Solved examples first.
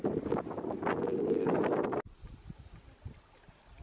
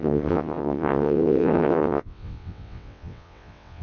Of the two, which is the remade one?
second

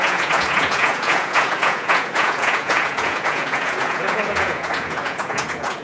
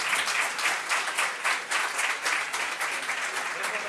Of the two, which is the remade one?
first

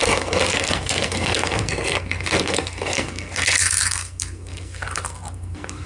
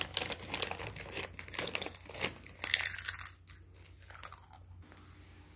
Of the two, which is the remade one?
first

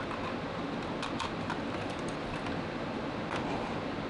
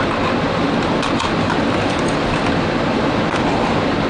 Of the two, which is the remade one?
second